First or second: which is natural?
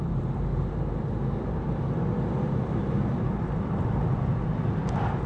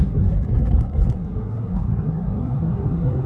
first